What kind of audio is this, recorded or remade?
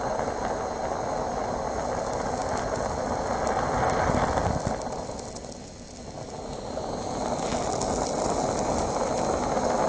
recorded